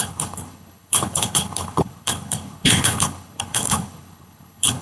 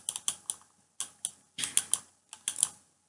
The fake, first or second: first